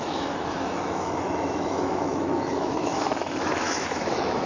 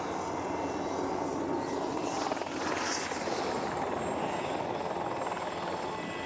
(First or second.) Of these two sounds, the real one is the second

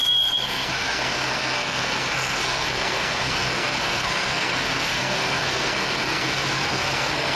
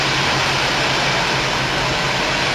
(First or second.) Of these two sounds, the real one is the second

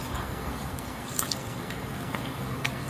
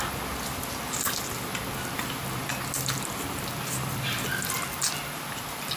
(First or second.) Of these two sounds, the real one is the second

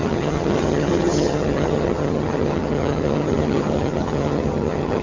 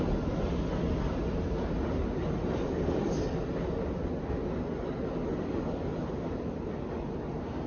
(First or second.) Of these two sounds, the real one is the second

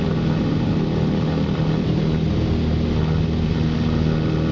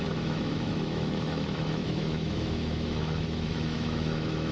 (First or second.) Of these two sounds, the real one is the first